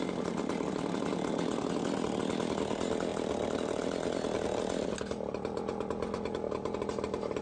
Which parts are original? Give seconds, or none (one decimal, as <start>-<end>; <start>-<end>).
0.0-7.4